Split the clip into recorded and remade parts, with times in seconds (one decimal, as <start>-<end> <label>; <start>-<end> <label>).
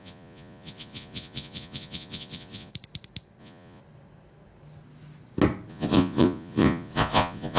0.0-2.7 remade; 2.7-3.4 recorded; 3.4-3.8 remade; 3.8-5.7 recorded; 5.7-7.6 remade